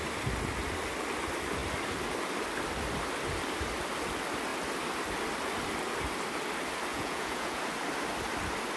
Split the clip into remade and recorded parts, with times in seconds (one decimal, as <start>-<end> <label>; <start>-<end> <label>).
0.0-6.9 recorded; 6.9-7.6 remade; 7.6-8.8 recorded